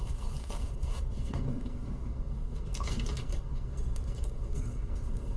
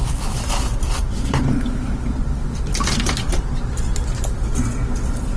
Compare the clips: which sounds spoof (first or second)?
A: first